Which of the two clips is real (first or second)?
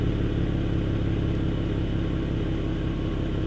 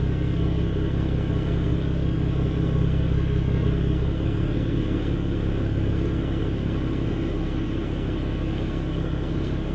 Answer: first